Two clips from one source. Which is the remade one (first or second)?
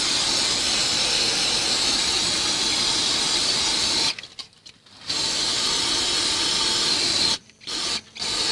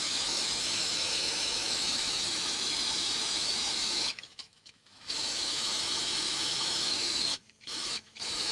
second